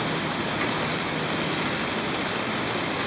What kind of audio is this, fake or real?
real